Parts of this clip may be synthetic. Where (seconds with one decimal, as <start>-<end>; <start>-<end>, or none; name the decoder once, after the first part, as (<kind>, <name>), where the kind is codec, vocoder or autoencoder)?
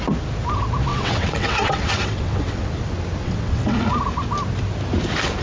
0.9-2.7 (vocoder, WaveNeXt); 3.2-3.8